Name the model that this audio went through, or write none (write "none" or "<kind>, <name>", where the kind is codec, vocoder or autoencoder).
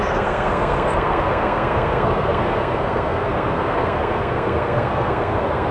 codec, SNAC